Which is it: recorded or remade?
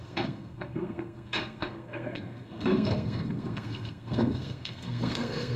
remade